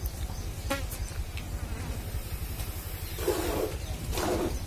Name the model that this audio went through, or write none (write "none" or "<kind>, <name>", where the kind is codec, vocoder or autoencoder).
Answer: none